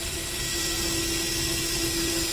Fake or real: real